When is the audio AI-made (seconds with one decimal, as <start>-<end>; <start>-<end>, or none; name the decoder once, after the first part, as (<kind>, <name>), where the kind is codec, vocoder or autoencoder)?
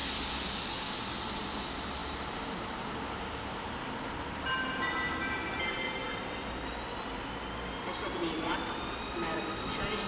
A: 2.0-6.6 (vocoder, BigVGAN v2)